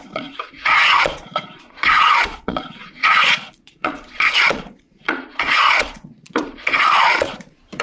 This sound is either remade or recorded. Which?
remade